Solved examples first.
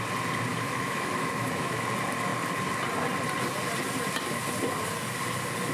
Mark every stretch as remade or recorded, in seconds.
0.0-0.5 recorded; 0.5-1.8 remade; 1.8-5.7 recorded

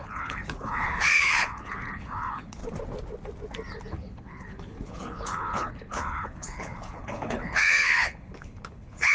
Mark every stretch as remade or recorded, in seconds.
0.0-2.6 remade; 2.6-3.9 recorded; 3.9-9.1 remade